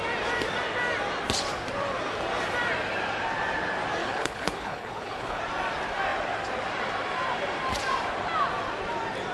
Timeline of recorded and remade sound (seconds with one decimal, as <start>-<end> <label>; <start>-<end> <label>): 0.0-4.0 recorded; 4.0-5.4 remade; 5.4-9.3 recorded